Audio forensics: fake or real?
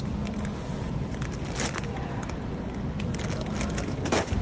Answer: real